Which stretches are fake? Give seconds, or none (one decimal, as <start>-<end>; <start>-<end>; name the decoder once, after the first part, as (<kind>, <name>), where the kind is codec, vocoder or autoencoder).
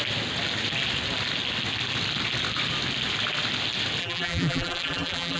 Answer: 4.0-5.4 (vocoder, BigVGAN v2)